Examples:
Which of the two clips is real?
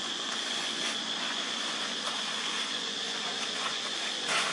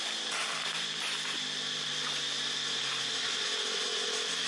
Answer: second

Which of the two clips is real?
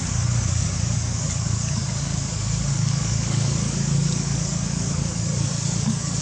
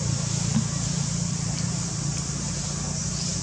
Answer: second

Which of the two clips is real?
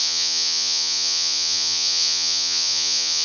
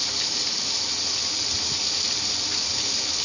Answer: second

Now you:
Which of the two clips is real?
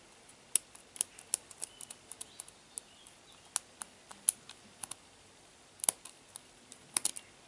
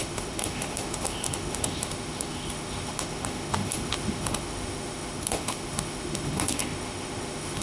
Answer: first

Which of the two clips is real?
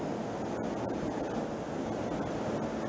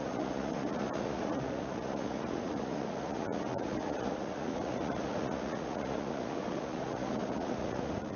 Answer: first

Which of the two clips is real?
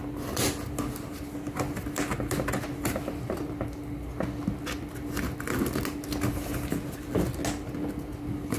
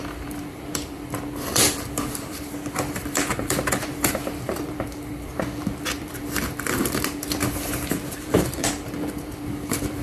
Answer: first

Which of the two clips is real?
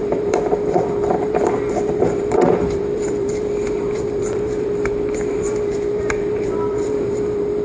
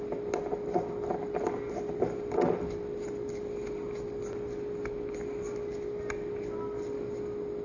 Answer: second